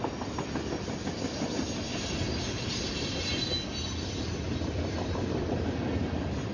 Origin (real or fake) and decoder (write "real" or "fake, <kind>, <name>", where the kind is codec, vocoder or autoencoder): real